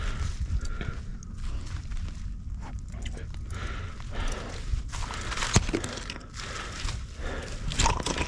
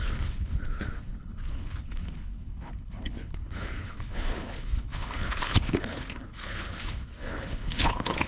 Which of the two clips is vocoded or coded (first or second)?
second